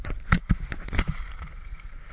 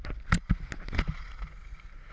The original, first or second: second